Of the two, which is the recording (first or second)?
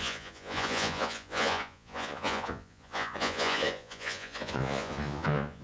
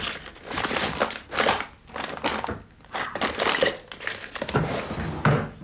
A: second